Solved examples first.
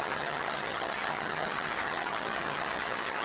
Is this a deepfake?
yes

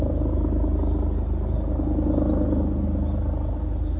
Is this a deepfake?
no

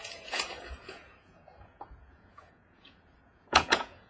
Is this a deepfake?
yes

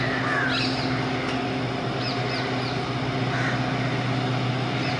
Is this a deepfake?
no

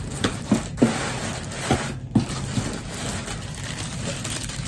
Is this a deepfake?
no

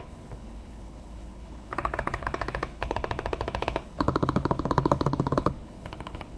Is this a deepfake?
yes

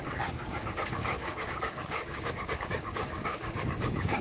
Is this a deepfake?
yes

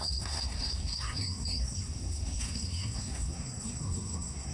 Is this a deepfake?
yes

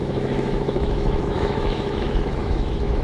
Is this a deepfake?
yes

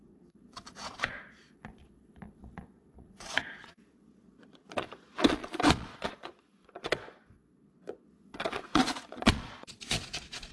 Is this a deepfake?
yes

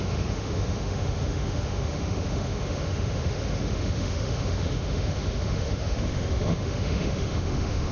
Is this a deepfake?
yes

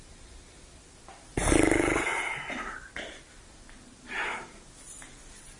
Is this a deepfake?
no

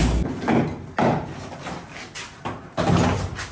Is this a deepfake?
no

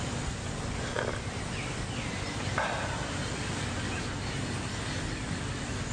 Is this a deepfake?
no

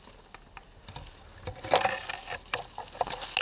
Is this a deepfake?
no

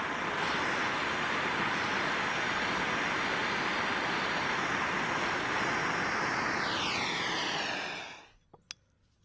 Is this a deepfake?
no